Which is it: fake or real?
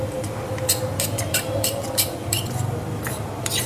fake